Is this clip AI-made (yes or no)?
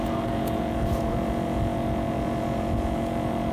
yes